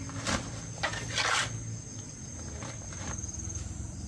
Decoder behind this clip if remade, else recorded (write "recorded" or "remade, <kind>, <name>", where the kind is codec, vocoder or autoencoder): recorded